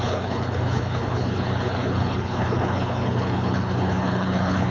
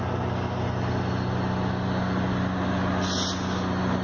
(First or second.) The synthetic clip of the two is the first